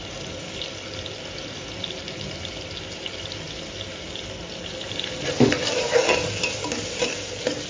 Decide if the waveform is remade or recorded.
recorded